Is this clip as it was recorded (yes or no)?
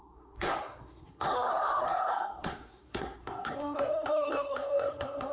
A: no